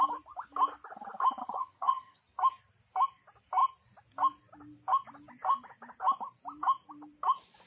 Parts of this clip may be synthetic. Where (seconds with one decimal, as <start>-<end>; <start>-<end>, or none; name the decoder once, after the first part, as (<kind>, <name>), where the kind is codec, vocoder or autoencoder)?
1.4-2.2 (vocoder, HiFi-GAN)